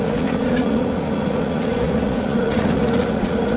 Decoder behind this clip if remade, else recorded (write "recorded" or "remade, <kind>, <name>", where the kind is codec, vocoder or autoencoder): remade, vocoder, Vocos